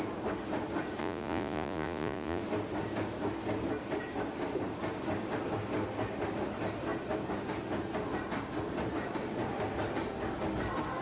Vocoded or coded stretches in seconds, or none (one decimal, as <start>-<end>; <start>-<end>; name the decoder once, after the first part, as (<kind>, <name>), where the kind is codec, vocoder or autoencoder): 1.0-2.4 (vocoder, Vocos)